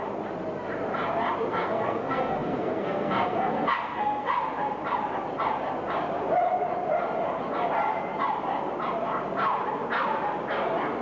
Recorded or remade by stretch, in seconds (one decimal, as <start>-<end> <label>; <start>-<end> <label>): 0.0-1.5 recorded; 1.5-4.3 remade; 4.3-11.0 recorded